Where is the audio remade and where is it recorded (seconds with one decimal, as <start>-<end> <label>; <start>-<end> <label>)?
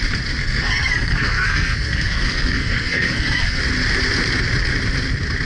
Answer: 0.0-0.4 recorded; 0.4-3.6 remade; 3.6-5.4 recorded